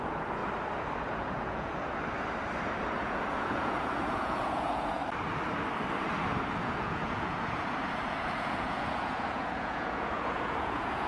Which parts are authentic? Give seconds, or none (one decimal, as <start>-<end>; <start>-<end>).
0.4-1.1; 1.7-3.0; 5.0-6.6